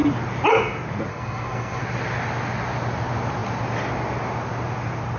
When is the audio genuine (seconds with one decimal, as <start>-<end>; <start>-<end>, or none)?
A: 0.0-1.1; 1.8-5.2